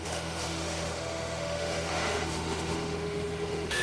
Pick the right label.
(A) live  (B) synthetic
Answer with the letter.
B